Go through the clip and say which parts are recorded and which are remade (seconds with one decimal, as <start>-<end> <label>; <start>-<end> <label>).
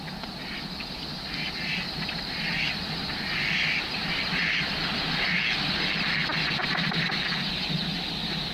0.0-6.6 recorded; 6.6-7.1 remade; 7.1-8.5 recorded